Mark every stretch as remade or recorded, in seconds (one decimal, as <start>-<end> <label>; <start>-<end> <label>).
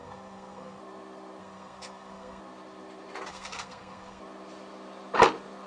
0.0-0.8 remade; 0.8-1.4 recorded; 1.4-2.4 remade; 2.4-3.3 recorded; 3.3-4.2 remade; 4.2-5.7 recorded